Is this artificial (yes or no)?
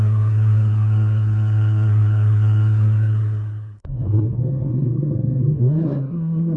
yes